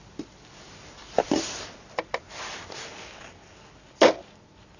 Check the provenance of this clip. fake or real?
real